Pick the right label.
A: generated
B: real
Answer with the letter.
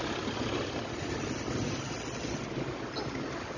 B